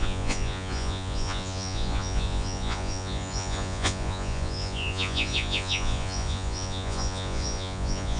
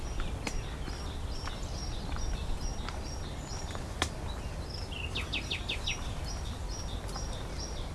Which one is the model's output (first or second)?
first